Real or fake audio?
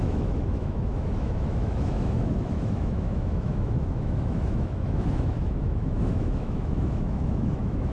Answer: fake